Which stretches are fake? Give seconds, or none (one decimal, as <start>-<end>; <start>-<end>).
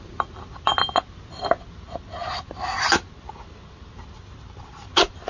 none